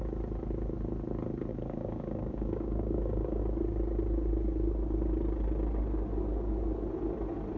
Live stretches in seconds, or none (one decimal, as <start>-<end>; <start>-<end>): 0.0-1.5; 3.4-7.6